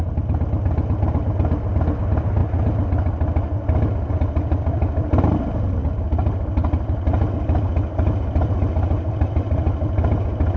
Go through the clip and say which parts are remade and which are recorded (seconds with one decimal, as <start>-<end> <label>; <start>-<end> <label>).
0.0-10.6 recorded